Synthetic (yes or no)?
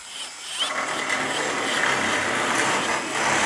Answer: no